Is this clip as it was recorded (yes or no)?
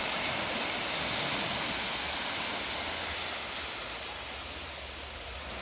yes